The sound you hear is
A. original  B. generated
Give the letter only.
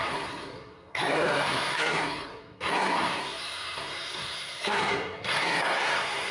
B